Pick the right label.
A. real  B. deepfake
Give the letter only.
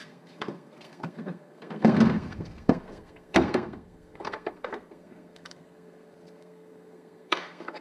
B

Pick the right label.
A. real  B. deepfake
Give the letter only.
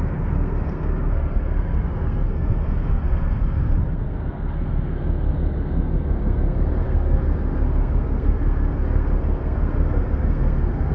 B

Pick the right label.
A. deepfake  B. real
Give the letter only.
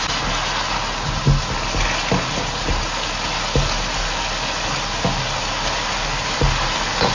B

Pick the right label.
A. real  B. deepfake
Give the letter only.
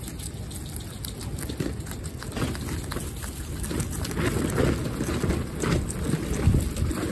A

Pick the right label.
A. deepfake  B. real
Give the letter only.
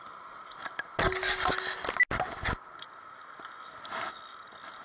B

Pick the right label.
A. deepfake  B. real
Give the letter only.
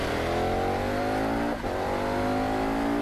B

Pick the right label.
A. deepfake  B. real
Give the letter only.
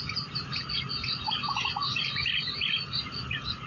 B